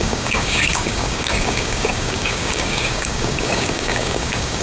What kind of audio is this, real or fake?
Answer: fake